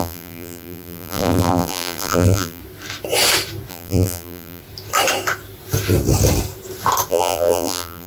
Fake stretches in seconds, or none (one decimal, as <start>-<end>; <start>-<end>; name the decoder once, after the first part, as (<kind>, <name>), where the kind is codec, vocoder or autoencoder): 0.0-2.6 (vocoder, BigVGAN v2); 3.7-4.6; 7.1-8.1